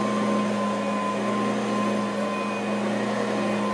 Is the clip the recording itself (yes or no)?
yes